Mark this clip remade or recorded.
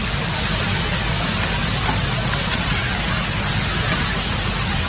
recorded